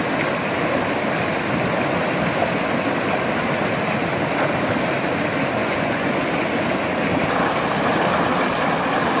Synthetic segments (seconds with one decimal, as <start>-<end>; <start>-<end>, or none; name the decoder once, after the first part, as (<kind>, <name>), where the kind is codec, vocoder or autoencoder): 5.6-6.2 (vocoder, Vocos)